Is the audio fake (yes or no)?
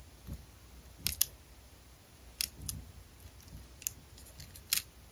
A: no